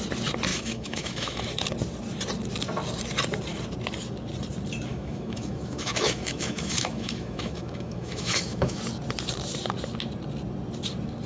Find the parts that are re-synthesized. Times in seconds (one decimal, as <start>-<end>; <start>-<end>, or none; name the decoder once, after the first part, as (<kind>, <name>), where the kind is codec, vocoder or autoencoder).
0.5-1.4 (autoencoder, DAC-VAE); 4.9-8.8